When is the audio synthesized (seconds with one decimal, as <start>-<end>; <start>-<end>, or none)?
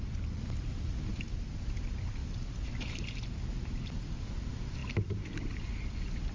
none